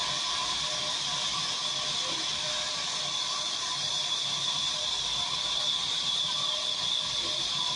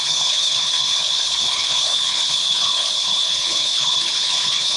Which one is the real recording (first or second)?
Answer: first